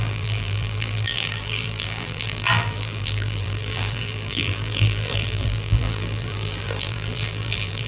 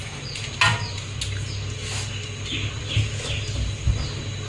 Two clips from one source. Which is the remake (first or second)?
first